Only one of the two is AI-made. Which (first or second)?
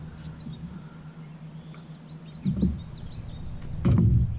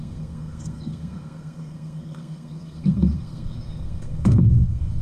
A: second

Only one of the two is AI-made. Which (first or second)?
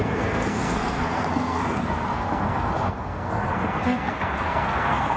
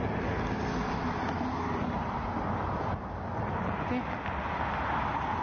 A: first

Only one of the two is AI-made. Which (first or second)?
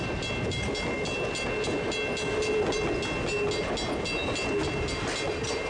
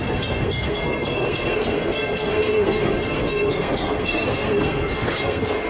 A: second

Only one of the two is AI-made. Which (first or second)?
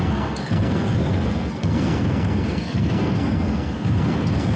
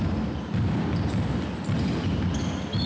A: first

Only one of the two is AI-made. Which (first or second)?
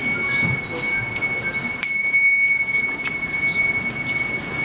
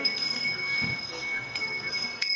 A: second